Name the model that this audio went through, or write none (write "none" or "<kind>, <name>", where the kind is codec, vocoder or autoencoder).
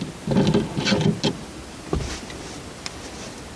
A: none